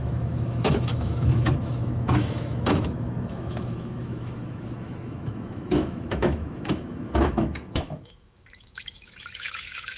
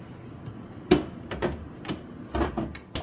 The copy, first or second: first